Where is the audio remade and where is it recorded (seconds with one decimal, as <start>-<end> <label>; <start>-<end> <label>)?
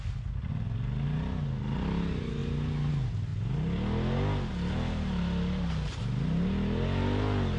0.0-7.6 recorded